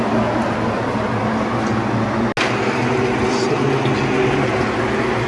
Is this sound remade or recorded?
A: recorded